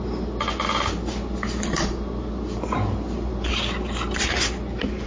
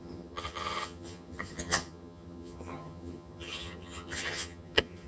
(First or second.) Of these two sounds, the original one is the first